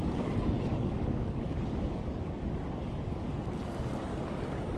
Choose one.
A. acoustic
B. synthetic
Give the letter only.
B